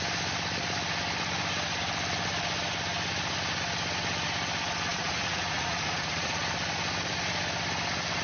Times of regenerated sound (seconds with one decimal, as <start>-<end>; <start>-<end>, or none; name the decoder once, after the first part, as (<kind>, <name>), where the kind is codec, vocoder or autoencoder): 4.9-6.4 (vocoder, Vocos)